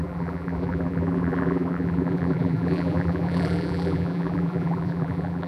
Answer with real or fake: fake